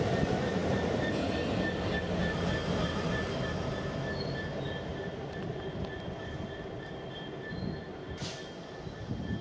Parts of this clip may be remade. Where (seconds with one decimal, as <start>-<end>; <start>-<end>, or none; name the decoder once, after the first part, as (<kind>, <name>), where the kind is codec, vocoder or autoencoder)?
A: 4.9-8.4 (vocoder, BigVGAN v2)